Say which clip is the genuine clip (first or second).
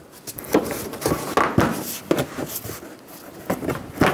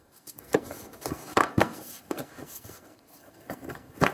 first